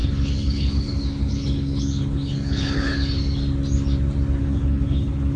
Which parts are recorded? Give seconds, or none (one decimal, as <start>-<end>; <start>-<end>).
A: 2.9-4.4